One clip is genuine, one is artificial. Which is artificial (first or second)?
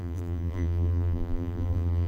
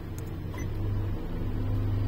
first